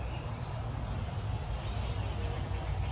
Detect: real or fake real